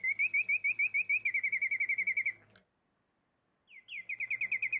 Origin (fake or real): real